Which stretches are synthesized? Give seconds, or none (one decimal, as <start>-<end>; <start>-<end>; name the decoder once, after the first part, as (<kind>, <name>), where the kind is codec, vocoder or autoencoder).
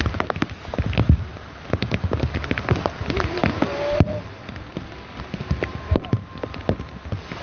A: 1.3-2.3 (vocoder, BigVGAN v2); 5.7-6.3